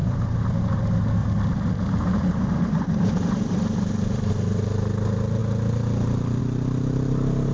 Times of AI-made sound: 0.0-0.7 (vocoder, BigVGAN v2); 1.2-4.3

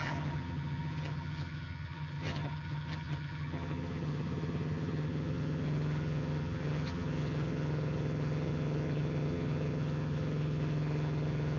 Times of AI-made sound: 0.0-11.6 (vocoder, HiFi-GAN)

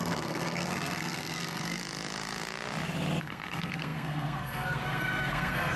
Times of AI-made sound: 0.0-1.8 (codec, SNAC); 3.2-5.8

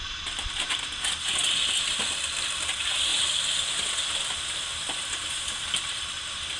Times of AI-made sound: none

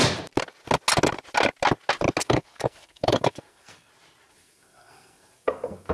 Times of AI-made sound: 2.2-3.9 (codec, SNAC); 4.3-5.9

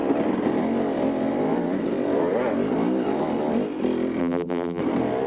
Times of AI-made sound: 4.2-4.8 (vocoder, BigVGAN v2)